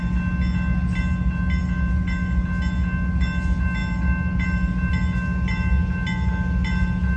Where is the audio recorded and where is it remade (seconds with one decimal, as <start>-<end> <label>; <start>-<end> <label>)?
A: 0.0-7.2 recorded

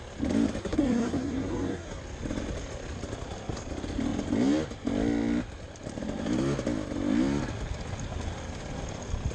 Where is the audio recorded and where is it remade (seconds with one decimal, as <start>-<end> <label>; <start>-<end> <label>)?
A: 0.0-0.6 recorded; 0.6-2.0 remade; 2.0-9.3 recorded

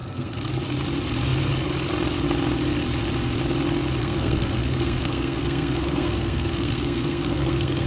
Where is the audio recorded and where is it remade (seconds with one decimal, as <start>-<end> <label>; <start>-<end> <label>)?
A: 0.0-0.5 remade; 0.5-4.0 recorded; 4.0-7.9 remade

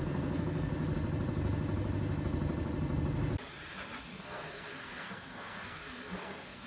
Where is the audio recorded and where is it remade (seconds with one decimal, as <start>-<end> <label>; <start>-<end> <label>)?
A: 0.0-0.7 remade; 0.7-4.1 recorded; 4.1-6.7 remade

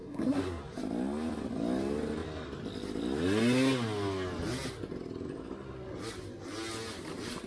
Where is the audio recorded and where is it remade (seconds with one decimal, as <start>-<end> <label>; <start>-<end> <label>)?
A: 0.0-0.6 remade; 0.6-7.5 recorded

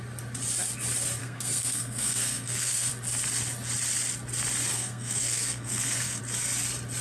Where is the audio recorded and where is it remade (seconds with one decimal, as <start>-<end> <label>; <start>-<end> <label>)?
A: 0.0-1.2 recorded; 1.2-2.9 remade; 2.9-4.7 recorded; 4.7-6.2 remade; 6.2-7.0 recorded

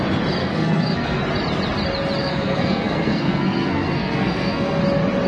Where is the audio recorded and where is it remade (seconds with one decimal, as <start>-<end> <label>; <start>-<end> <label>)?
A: 0.0-0.4 recorded; 0.4-1.2 remade; 1.2-2.2 recorded; 2.2-4.8 remade; 4.8-5.3 recorded